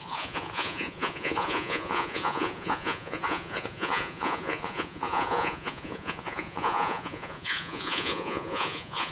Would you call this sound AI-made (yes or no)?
yes